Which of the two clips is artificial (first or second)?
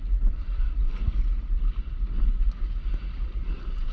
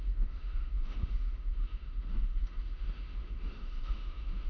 second